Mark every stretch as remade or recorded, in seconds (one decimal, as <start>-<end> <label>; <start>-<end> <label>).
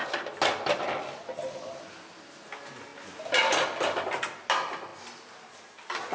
0.0-6.1 recorded